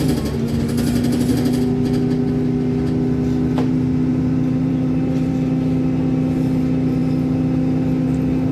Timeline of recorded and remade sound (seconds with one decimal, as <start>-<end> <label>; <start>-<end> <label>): 0.0-4.1 recorded; 4.1-5.3 remade; 5.3-8.5 recorded